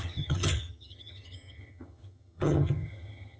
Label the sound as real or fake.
fake